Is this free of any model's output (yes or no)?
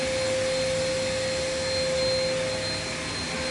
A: yes